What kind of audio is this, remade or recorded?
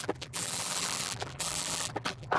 remade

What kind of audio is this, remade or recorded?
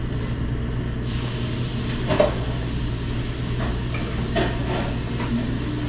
recorded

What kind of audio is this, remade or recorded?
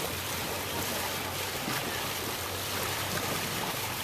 remade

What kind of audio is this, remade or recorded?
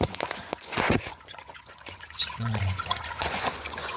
remade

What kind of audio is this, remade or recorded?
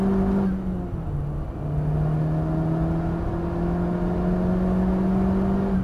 recorded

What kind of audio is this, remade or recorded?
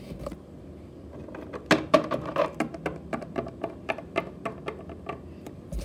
recorded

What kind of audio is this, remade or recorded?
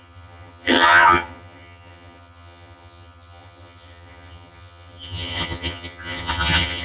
remade